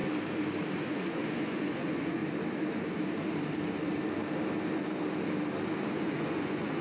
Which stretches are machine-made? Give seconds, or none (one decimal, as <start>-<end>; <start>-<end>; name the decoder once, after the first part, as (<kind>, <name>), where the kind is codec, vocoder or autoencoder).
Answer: 0.7-2.2 (vocoder, Vocos); 5.9-6.8

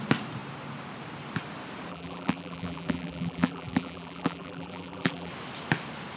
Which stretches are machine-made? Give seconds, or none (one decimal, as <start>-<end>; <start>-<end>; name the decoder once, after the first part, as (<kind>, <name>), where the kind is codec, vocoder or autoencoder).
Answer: 1.9-5.3 (vocoder, BigVGAN v2)

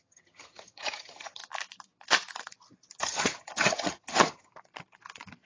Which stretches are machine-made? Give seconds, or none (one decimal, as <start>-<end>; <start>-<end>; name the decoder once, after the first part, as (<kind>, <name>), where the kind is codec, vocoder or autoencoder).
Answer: 0.0-1.4 (vocoder, HiFi-GAN); 3.0-4.5

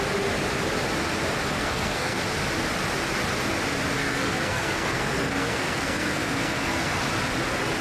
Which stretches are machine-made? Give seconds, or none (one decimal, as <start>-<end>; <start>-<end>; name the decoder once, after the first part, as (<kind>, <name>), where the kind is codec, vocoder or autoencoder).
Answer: 1.5-2.2 (codec, SNAC); 4.0-7.0

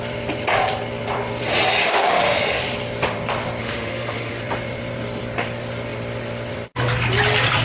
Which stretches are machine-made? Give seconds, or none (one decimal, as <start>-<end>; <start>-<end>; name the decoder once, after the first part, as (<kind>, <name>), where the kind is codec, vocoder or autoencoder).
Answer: 1.8-2.6 (autoencoder, DAC-VAE); 3.6-4.4

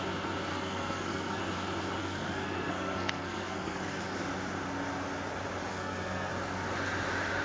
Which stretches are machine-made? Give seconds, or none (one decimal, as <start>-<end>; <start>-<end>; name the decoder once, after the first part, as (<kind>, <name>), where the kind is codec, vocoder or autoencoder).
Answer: 0.5-1.4 (codec, SNAC); 2.0-4.0; 5.7-6.3